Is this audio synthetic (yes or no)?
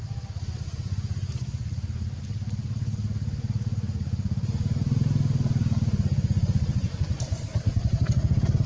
no